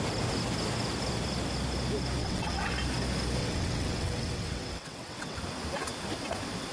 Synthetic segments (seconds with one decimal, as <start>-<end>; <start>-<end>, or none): 2.2-2.7; 3.4-5.4